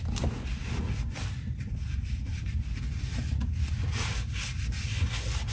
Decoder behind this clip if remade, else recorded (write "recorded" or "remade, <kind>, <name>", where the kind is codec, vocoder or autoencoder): remade, vocoder, BigVGAN v2